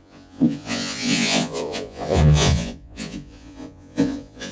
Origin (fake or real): fake